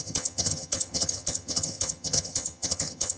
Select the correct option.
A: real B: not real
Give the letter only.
B